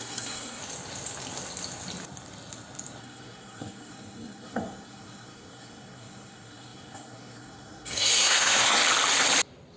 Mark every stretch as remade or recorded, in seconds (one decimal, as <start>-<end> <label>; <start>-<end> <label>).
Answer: 0.0-0.6 remade; 0.6-3.0 recorded; 3.0-8.8 remade; 8.8-9.8 recorded